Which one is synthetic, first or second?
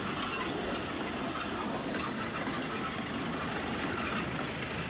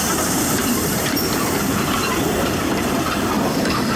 second